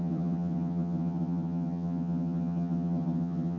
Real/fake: fake